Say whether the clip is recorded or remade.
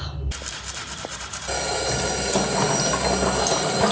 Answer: recorded